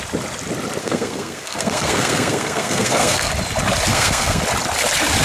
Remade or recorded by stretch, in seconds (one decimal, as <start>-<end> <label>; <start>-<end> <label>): 0.0-0.8 recorded; 0.8-3.3 remade; 3.3-3.9 recorded; 3.9-4.4 remade; 4.4-5.2 recorded

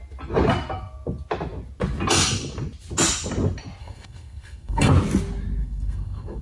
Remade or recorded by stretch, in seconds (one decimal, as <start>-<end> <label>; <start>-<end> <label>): 0.0-3.8 recorded; 3.8-4.9 remade; 4.9-5.6 recorded; 5.6-6.4 remade

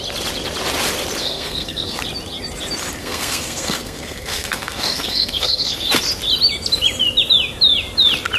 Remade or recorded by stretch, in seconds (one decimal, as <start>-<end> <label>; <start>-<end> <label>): 0.0-1.2 recorded; 1.2-2.0 remade; 2.0-3.0 recorded; 3.0-5.9 remade; 5.9-8.4 recorded

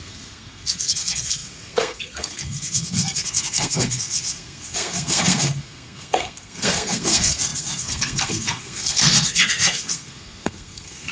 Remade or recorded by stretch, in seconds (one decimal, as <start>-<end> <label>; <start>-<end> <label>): 0.0-11.1 remade

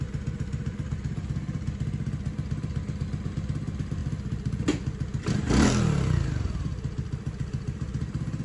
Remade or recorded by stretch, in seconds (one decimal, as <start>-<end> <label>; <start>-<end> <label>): 0.0-8.4 recorded

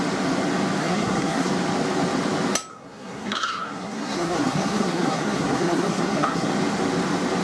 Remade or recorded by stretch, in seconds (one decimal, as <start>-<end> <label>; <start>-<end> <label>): 0.0-0.8 recorded; 0.8-1.5 remade; 1.5-2.7 recorded; 2.7-6.5 remade; 6.5-7.4 recorded

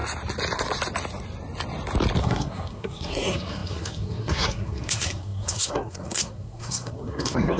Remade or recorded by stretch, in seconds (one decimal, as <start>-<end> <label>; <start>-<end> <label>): 0.0-2.2 recorded; 2.2-7.6 remade

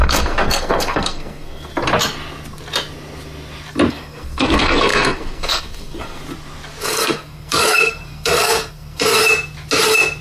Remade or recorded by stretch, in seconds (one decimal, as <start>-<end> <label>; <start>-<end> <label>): 0.0-1.7 remade; 1.7-3.9 recorded; 3.9-6.2 remade; 6.2-6.8 recorded; 6.8-9.2 remade; 9.2-10.2 recorded